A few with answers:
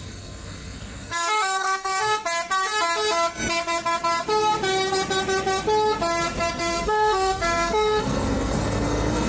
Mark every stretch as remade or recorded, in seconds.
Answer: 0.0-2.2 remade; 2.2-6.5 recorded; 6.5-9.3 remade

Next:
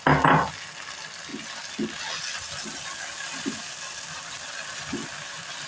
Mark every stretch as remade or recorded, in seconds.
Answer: 0.0-5.7 recorded

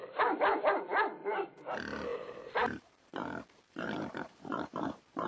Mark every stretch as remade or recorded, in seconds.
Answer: 0.0-2.1 recorded; 2.1-5.3 remade

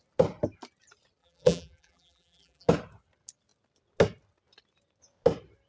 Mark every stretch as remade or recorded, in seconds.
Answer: 0.0-1.2 recorded; 1.2-2.7 remade; 2.7-5.7 recorded

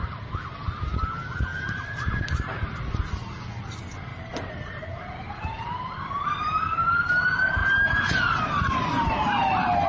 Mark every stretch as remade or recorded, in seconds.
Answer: 0.0-1.5 recorded; 1.5-2.9 remade; 2.9-4.1 recorded; 4.1-5.7 remade; 5.7-9.9 recorded

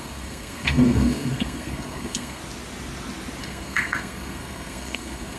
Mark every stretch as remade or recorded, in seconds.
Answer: 0.0-2.4 remade; 2.4-3.4 recorded; 3.4-5.4 remade